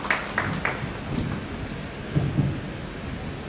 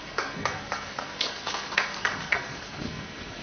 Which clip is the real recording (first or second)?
first